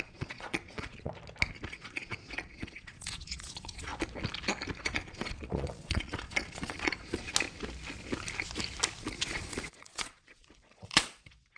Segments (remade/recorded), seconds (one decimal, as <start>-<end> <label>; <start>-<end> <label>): 0.0-1.1 remade; 1.1-1.7 recorded; 1.7-3.9 remade; 3.9-4.8 recorded; 4.8-7.3 remade; 7.3-9.0 recorded; 9.0-11.6 remade